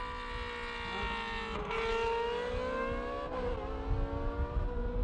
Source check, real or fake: real